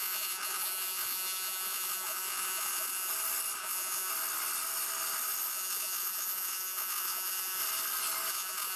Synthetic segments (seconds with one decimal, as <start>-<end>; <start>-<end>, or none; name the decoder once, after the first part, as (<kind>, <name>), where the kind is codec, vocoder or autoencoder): 0.0-3.1 (vocoder, Vocos); 3.6-4.1; 5.5-7.6; 8.3-8.8